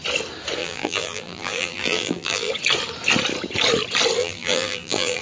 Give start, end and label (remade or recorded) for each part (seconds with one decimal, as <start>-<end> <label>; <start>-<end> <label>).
0.0-0.6 recorded; 0.6-2.5 remade; 2.5-4.2 recorded; 4.2-5.2 remade